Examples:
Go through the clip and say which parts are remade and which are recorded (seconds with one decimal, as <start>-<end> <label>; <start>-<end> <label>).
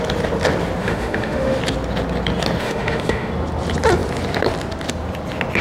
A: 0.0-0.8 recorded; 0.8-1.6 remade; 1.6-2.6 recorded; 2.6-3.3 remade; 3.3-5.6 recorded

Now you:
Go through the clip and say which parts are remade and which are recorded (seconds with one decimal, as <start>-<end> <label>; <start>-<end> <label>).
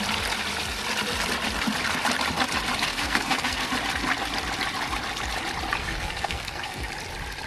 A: 0.0-2.9 recorded; 2.9-3.7 remade; 3.7-5.8 recorded; 5.8-6.9 remade; 6.9-7.5 recorded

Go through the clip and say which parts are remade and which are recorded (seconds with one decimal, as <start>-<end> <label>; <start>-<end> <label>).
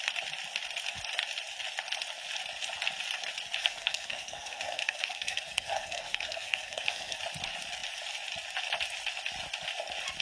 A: 0.0-3.6 recorded; 3.6-7.2 remade; 7.2-10.2 recorded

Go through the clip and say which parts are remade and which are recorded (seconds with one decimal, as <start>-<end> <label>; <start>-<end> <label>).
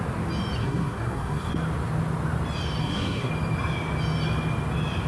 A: 0.0-0.6 recorded; 0.6-1.5 remade; 1.5-2.8 recorded; 2.8-3.3 remade; 3.3-5.1 recorded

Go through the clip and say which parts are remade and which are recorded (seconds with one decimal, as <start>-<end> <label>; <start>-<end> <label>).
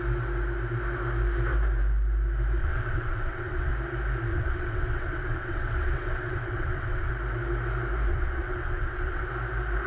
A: 0.0-2.6 recorded; 2.6-3.7 remade; 3.7-4.3 recorded; 4.3-7.1 remade; 7.1-8.1 recorded; 8.1-9.3 remade; 9.3-9.9 recorded